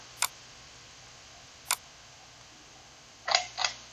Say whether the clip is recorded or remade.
recorded